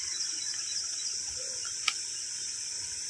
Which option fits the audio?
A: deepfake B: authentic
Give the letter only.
B